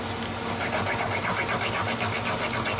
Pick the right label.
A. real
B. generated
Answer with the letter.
A